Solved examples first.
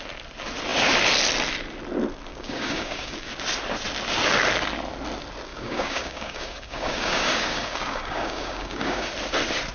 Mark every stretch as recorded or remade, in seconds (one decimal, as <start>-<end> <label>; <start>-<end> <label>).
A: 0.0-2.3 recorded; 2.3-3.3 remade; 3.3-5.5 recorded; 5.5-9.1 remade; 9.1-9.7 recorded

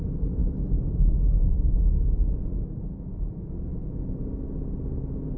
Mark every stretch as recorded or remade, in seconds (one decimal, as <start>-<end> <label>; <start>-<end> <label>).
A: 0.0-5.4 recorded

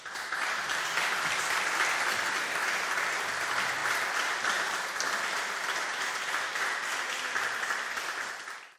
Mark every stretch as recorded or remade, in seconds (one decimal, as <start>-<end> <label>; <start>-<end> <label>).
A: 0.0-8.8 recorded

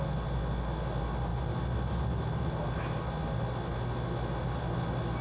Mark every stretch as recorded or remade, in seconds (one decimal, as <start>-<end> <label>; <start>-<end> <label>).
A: 0.0-5.2 recorded

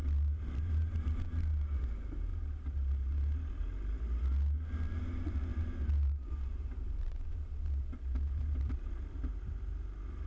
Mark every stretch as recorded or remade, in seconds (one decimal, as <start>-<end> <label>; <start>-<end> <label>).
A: 0.0-1.0 remade; 1.0-2.3 recorded; 2.3-3.6 remade; 3.6-5.5 recorded; 5.5-9.2 remade; 9.2-10.3 recorded

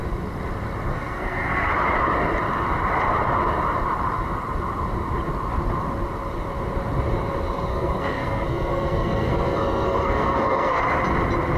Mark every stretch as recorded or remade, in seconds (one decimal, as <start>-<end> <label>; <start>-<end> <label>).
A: 0.0-0.9 recorded; 0.9-1.7 remade; 1.7-7.7 recorded; 7.7-10.8 remade; 10.8-11.6 recorded

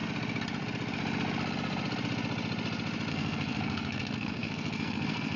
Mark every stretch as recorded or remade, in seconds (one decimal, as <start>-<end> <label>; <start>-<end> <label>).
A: 0.0-3.1 recorded; 3.1-5.4 remade

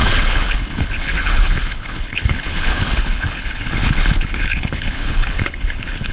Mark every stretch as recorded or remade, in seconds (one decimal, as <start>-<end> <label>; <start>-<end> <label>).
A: 0.0-6.1 remade